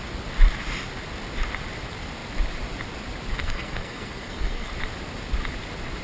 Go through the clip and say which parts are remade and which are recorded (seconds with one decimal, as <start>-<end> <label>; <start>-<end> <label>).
0.0-3.4 recorded; 3.4-4.7 remade; 4.7-6.0 recorded

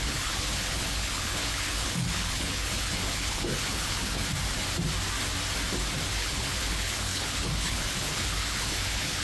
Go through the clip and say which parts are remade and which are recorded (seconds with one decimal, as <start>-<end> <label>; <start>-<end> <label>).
0.0-4.3 remade; 4.3-6.1 recorded; 6.1-9.2 remade

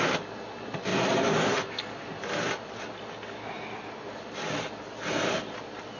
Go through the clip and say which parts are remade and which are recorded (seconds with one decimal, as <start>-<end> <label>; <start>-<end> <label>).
0.0-6.0 recorded

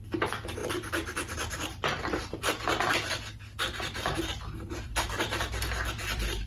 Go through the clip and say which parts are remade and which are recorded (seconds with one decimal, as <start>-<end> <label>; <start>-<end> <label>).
0.0-0.6 recorded; 0.6-3.1 remade; 3.1-4.3 recorded; 4.3-6.5 remade